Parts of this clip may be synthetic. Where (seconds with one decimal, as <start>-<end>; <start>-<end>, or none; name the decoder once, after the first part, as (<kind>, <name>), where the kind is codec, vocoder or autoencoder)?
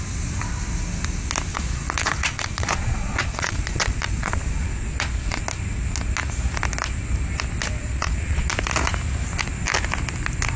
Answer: 1.5-5.4 (vocoder, Vocos); 7.8-8.5